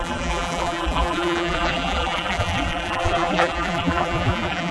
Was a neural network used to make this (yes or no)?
yes